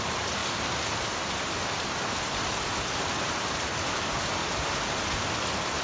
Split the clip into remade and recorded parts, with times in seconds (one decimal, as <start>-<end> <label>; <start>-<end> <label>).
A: 0.0-5.8 recorded